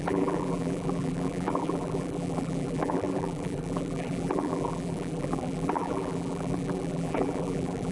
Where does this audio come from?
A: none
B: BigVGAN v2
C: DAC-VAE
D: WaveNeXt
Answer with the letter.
B